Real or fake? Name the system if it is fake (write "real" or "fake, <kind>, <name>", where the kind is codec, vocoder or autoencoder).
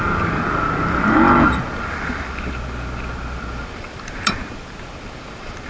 real